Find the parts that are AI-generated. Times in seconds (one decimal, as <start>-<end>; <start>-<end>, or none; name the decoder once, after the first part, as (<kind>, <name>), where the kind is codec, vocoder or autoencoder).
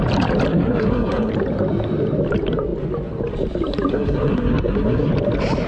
0.5-1.3 (codec, SNAC); 3.9-5.1